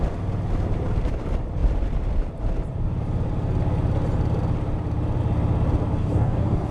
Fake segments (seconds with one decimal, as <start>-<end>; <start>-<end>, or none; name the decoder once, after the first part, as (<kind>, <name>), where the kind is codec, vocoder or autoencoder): 6.0-6.7 (codec, DAC)